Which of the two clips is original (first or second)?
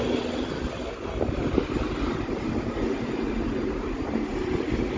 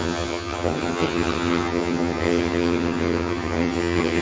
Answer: first